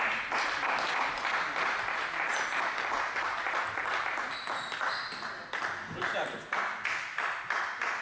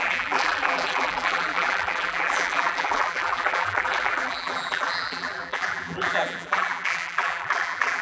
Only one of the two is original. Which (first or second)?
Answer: first